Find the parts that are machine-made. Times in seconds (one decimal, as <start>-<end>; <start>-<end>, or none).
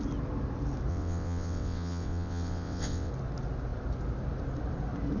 0.9-3.1